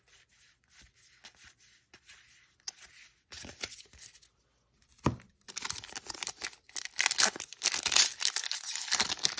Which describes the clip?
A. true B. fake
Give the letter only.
A